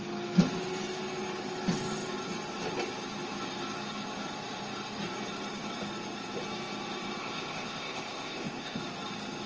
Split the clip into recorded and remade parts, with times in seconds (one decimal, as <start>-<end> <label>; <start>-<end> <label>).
0.0-7.2 recorded; 7.2-8.8 remade; 8.8-9.5 recorded